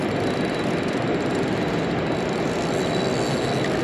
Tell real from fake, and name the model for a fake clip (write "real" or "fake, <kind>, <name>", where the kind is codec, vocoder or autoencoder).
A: real